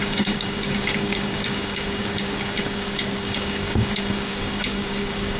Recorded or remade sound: remade